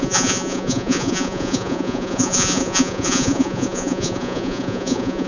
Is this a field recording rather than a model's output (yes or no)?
no